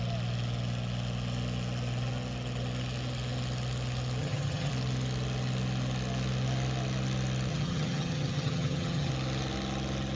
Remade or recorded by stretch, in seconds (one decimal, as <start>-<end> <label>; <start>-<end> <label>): 0.0-4.2 recorded; 4.2-4.7 remade; 4.7-7.5 recorded; 7.5-9.1 remade; 9.1-10.2 recorded